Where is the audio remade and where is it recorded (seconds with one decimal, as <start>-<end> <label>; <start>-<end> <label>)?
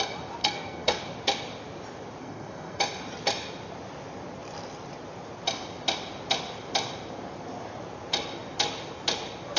0.0-0.4 recorded; 0.4-1.0 remade; 1.0-2.2 recorded; 2.2-2.8 remade; 2.8-9.6 recorded